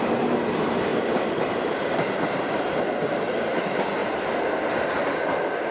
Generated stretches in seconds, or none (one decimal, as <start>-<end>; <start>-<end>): 0.9-2.8